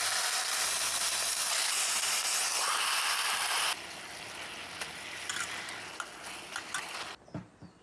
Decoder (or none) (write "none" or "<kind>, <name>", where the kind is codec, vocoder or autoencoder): none